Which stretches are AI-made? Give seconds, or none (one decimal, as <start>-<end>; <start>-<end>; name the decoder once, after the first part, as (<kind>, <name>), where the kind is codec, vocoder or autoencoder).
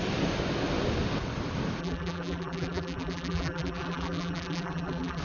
1.8-5.2 (vocoder, BigVGAN v2)